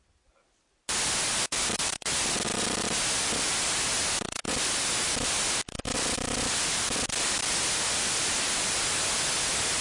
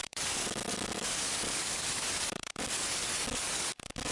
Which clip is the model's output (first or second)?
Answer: second